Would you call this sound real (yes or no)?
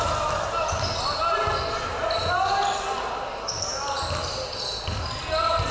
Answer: yes